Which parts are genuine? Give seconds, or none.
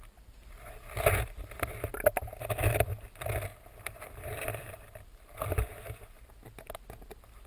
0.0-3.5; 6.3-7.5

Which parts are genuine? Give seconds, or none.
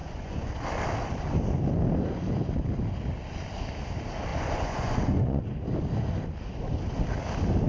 0.5-4.3; 5.4-7.7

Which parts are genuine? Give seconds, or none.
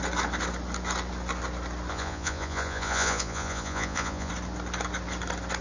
0.0-1.9; 4.3-5.6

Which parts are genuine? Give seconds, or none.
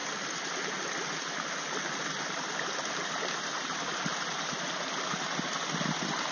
0.0-6.3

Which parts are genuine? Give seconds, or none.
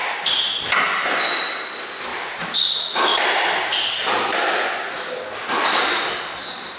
0.0-6.8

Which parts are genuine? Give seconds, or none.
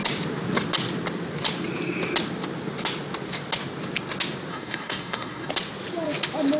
0.0-4.5; 5.5-6.6